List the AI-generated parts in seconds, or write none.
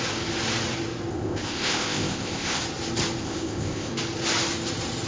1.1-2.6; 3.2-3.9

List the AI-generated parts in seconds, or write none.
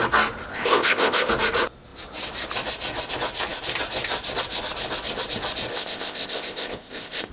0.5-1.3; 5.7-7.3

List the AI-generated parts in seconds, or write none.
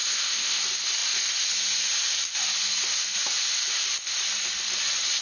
0.0-0.6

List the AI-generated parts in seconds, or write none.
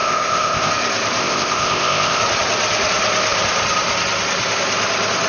0.0-0.7; 1.2-2.2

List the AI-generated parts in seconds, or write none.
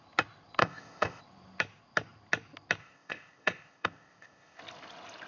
0.6-1.2; 2.8-4.6